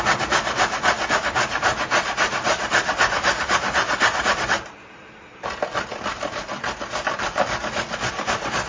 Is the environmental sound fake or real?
fake